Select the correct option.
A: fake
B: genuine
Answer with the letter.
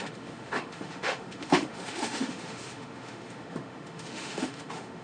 A